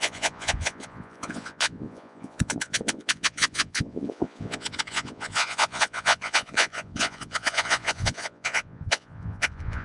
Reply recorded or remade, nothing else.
remade